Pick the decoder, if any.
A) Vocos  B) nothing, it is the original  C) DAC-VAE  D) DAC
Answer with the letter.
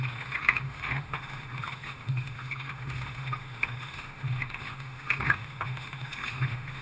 C